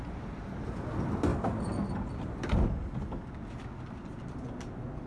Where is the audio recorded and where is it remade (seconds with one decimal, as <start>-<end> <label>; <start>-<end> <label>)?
0.0-5.1 recorded